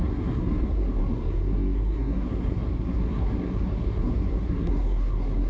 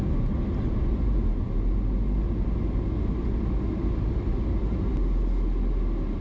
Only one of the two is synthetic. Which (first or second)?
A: first